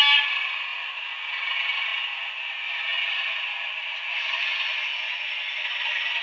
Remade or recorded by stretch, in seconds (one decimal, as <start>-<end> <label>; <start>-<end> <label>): 0.0-6.2 recorded